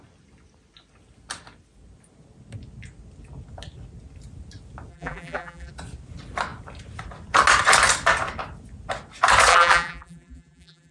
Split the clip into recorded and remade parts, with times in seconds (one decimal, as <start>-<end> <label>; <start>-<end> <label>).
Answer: 0.0-4.9 recorded; 4.9-5.7 remade; 5.7-9.5 recorded; 9.5-10.9 remade